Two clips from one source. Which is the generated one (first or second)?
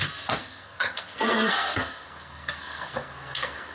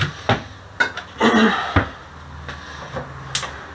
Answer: first